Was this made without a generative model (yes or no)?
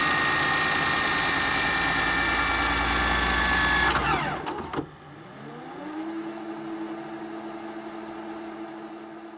yes